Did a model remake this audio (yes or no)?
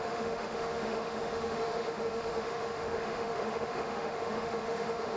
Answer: yes